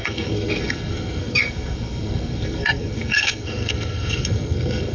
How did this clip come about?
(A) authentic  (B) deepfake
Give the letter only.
B